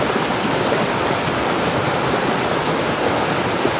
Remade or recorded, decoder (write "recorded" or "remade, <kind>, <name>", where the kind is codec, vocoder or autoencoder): recorded